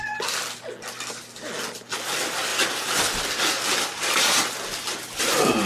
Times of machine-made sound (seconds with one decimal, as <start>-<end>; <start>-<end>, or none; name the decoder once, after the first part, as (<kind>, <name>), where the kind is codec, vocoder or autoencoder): 2.5-5.2 (vocoder, BigVGAN v2)